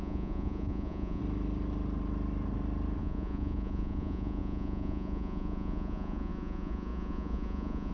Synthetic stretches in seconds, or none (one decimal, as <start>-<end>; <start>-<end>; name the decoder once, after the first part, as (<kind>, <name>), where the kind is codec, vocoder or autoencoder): 0.0-1.2 (vocoder, Vocos); 3.0-7.9